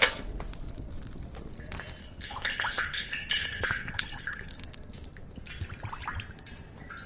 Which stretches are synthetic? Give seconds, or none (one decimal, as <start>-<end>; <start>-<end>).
2.0-4.6